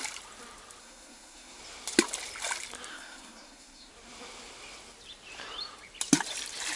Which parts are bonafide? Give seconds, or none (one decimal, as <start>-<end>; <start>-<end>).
0.0-0.8; 1.6-2.9; 3.9-6.8